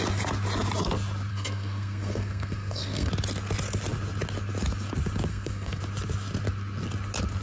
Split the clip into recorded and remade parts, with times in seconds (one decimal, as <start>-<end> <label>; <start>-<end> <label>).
0.0-1.3 recorded; 1.3-3.1 remade; 3.1-5.3 recorded; 5.3-5.8 remade; 5.8-7.4 recorded